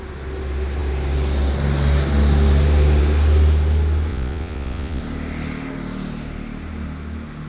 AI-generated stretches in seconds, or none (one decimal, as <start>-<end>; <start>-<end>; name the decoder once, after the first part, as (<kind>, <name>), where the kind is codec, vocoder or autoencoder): 4.1-5.0 (vocoder, Vocos)